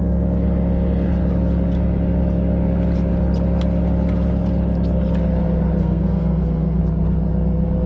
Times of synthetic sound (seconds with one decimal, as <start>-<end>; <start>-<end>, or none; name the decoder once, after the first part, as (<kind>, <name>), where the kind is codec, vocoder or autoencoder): 5.8-6.8 (codec, SNAC)